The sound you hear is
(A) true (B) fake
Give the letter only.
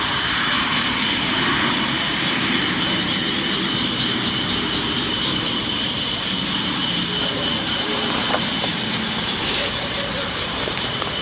B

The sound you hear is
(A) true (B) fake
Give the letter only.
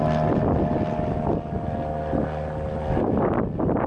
A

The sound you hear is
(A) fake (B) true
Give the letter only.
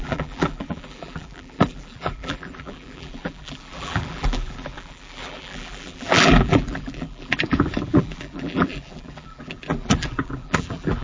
A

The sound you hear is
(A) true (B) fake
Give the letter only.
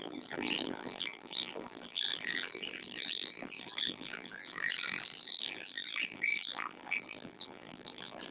B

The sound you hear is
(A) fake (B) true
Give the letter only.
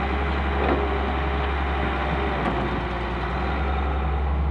B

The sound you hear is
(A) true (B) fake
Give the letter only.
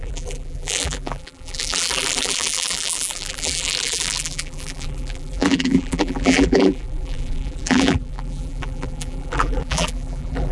B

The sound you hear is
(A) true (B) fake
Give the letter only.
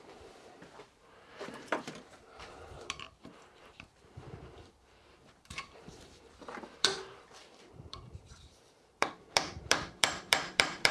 B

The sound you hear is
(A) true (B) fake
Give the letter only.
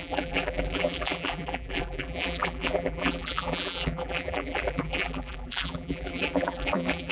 B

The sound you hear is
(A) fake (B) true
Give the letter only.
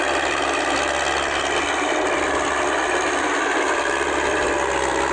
B